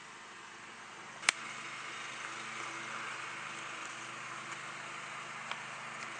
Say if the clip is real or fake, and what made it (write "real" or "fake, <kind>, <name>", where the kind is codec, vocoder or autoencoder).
real